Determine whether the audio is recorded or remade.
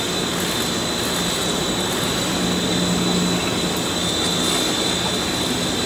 recorded